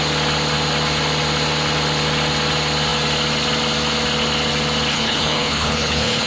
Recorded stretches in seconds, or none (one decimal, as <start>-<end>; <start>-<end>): 0.0-4.9